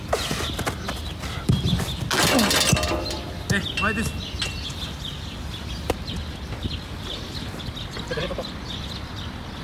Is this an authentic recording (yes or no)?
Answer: yes